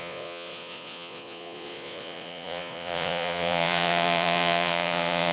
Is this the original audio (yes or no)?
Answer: no